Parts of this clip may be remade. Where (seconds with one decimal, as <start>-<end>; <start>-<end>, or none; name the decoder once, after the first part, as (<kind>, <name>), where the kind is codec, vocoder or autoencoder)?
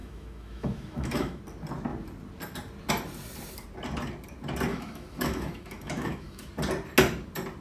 0.0-1.4 (autoencoder, DAC-VAE); 4.7-6.5